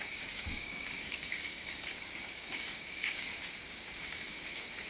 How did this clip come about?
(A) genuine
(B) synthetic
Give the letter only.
B